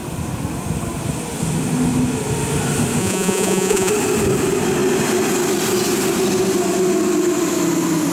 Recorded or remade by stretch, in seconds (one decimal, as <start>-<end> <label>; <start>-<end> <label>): 0.0-3.0 recorded; 3.0-3.9 remade; 3.9-8.1 recorded